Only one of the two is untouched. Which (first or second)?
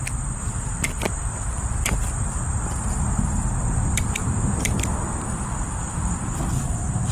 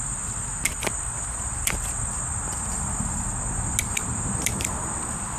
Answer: second